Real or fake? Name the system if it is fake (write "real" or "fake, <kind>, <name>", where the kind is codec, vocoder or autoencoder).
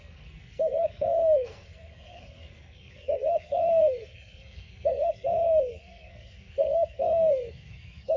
fake, codec, SNAC